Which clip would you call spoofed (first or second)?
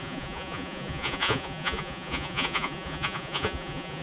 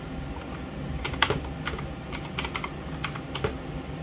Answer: first